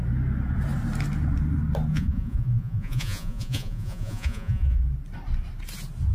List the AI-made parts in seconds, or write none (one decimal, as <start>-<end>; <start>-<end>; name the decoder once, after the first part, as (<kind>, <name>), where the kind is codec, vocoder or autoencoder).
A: 1.9-4.8 (vocoder, Vocos)

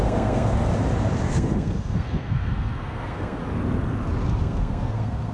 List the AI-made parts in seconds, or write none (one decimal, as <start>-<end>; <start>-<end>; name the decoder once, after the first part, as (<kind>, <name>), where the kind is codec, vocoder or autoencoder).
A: 0.0-0.7 (codec, SNAC); 1.3-3.4; 4.4-5.3

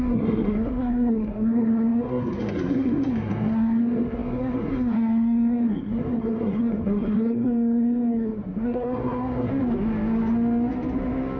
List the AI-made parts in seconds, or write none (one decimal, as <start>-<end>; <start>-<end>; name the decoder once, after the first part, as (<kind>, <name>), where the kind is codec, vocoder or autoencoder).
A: 0.0-9.5 (codec, SNAC)

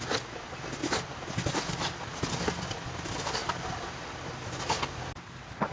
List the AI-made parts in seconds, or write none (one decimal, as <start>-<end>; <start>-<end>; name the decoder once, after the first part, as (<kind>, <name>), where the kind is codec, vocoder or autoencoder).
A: none

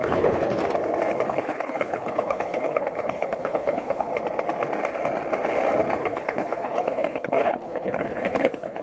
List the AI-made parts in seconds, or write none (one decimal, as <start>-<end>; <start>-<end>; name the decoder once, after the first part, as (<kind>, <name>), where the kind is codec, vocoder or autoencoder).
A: 0.0-0.6 (codec, HILCodec); 1.3-4.1; 6.0-8.8